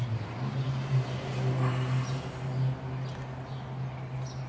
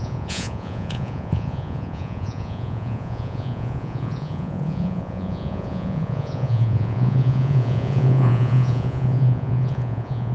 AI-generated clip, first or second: second